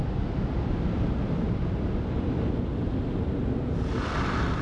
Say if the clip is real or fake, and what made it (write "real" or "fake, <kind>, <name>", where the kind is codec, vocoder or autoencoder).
real